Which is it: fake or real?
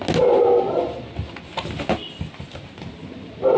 real